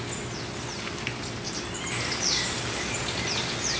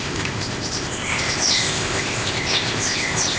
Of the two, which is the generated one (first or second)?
second